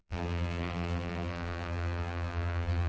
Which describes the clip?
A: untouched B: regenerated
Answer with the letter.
B